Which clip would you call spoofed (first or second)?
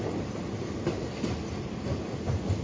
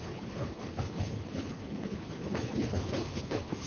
second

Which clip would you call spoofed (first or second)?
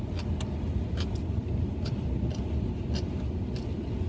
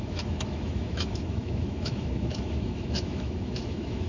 second